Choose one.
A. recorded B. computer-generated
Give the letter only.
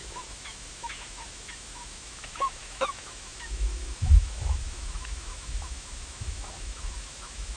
B